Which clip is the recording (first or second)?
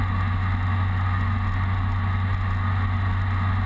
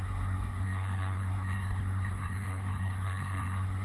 first